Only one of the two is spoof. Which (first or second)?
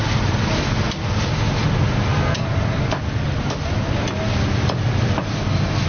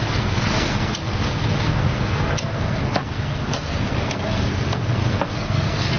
second